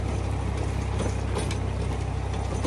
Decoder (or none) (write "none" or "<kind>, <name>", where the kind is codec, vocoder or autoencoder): none